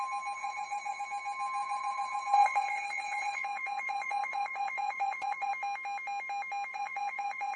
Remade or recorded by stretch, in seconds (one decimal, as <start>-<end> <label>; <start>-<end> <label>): 0.0-0.4 recorded; 0.4-1.0 remade; 1.0-1.6 recorded; 1.6-5.5 remade; 5.5-6.7 recorded; 6.7-7.6 remade

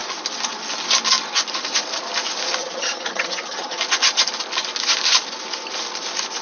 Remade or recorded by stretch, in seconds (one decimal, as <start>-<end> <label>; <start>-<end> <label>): 0.0-2.6 recorded; 2.6-3.8 remade; 3.8-6.4 recorded

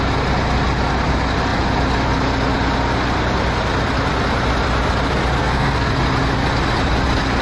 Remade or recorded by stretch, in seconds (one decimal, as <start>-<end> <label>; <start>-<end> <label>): 0.0-5.4 recorded; 5.4-5.9 remade; 5.9-7.4 recorded

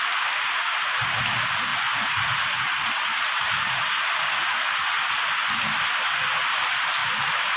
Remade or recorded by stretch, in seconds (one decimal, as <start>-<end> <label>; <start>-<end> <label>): 0.0-7.6 recorded

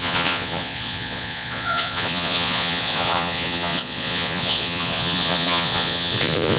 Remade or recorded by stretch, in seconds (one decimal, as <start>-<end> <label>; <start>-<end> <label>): 0.0-6.6 remade